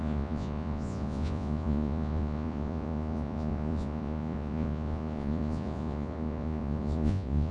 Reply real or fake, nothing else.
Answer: fake